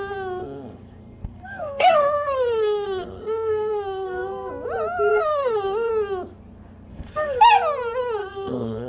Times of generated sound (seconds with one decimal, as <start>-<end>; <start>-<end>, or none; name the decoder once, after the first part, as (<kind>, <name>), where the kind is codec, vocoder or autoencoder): 0.4-4.5 (codec, SNAC); 5.1-5.9; 6.9-7.4; 8.2-8.9